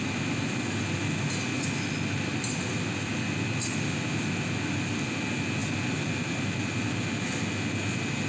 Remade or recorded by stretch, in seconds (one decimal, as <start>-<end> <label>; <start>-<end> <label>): 0.0-8.3 recorded